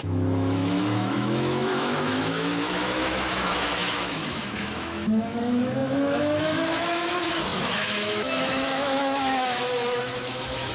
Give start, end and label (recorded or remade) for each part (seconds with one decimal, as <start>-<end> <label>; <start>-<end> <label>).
0.0-10.7 remade